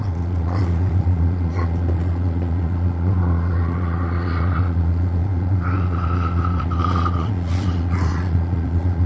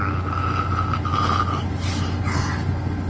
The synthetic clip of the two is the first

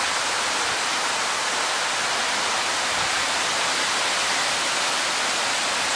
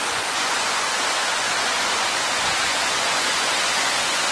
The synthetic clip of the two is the second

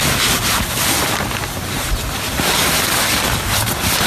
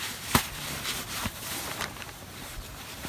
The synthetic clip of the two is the second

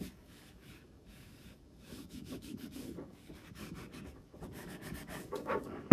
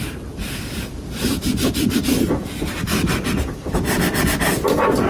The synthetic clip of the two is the first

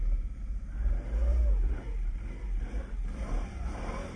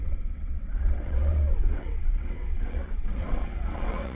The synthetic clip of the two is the second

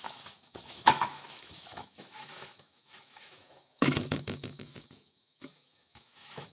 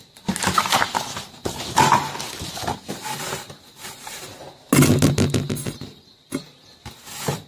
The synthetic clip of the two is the first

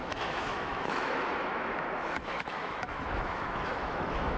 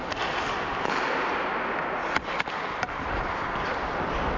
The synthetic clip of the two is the first